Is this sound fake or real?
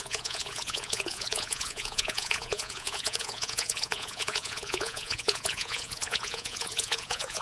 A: fake